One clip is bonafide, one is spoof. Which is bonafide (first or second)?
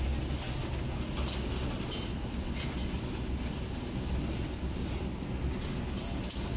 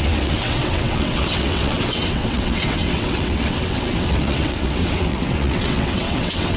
first